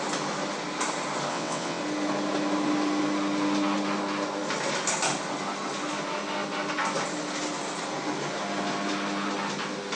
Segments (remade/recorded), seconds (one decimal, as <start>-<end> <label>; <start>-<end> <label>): 0.0-1.3 recorded; 1.3-1.8 remade; 1.8-10.0 recorded